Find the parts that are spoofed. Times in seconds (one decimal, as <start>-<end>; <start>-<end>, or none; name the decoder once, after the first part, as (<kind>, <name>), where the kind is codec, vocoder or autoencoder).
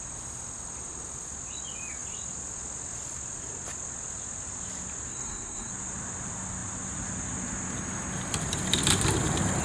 5.1-5.7 (codec, SNAC)